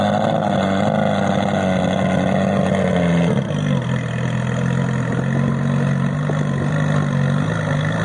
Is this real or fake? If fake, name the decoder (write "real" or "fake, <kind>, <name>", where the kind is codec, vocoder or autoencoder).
real